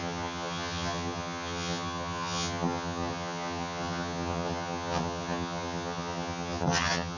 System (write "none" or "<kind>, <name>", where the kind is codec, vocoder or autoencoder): vocoder, HiFi-GAN